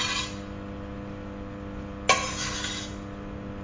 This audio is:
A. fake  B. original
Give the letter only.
B